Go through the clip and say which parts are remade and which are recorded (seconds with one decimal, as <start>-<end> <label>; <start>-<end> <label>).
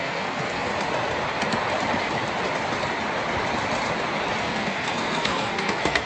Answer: 0.0-0.7 remade; 0.7-4.4 recorded; 4.4-6.1 remade